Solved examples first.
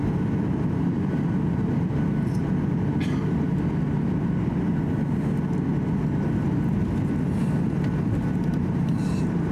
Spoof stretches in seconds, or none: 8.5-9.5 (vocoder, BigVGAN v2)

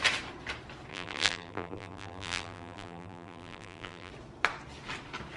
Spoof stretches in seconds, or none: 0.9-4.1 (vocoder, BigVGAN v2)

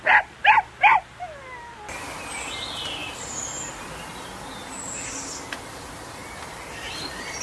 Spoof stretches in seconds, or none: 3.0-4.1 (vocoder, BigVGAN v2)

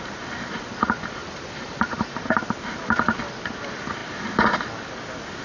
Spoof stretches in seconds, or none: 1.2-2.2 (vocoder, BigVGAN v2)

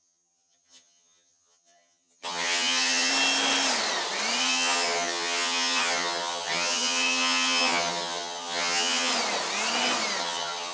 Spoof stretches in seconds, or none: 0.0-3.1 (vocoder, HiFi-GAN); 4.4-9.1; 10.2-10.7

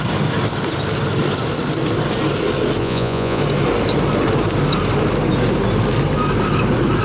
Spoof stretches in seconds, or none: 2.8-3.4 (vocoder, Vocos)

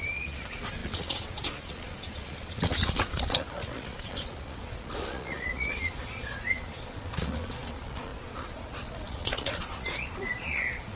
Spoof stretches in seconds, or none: 0.0-11.0 (vocoder, Vocos)

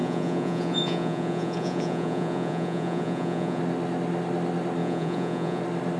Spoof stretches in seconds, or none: 0.0-3.6 (vocoder, Vocos); 4.8-5.6